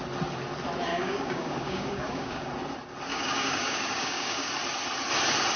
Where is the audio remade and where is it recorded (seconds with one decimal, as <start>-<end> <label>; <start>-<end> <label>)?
0.0-0.9 recorded; 0.9-2.5 remade; 2.5-3.1 recorded; 3.1-4.5 remade; 4.5-5.6 recorded